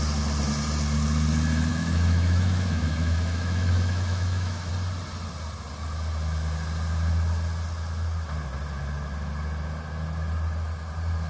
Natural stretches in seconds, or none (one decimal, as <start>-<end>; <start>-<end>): 0.0-1.7; 4.7-11.3